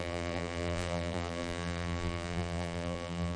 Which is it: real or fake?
fake